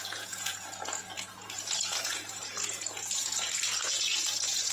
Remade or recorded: remade